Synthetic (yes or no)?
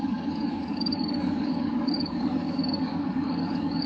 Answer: yes